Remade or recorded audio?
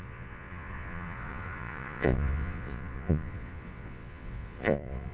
remade